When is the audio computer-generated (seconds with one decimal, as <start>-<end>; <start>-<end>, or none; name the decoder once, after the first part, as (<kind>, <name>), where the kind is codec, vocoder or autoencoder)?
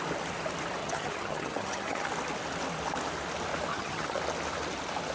0.8-2.1 (vocoder, HiFi-GAN); 3.7-4.2